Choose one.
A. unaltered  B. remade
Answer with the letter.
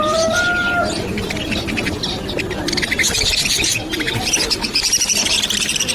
B